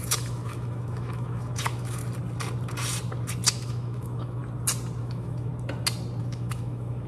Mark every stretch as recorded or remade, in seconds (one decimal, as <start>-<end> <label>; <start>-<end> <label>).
0.0-2.0 remade; 2.0-3.5 recorded; 3.5-4.4 remade; 4.4-5.0 recorded; 5.0-5.5 remade; 5.5-6.2 recorded; 6.2-7.1 remade